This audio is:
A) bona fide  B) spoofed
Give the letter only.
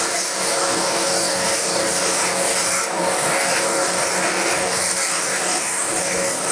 B